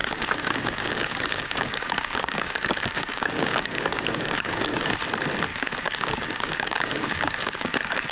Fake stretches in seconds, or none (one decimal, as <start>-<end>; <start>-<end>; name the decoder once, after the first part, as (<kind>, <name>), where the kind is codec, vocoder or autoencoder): 0.0-4.9 (codec, DAC); 5.5-8.1